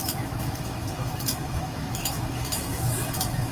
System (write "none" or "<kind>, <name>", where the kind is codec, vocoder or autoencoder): autoencoder, DAC-VAE